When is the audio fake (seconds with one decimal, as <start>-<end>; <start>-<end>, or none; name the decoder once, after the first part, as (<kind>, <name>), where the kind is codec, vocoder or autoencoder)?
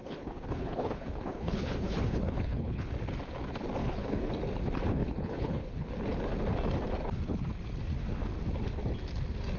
0.0-2.9 (codec, HILCodec); 3.8-4.3; 4.9-5.9